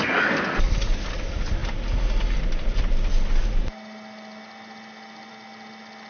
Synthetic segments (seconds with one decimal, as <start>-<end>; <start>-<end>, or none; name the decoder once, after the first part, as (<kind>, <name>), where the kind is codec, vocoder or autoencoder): none